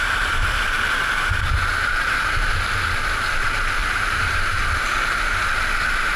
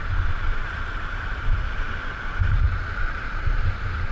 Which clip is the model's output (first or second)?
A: second